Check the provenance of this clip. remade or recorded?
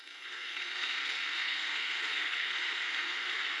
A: remade